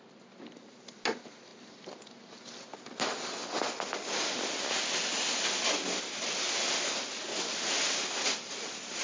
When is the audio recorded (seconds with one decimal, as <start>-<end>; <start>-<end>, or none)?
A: 0.0-9.0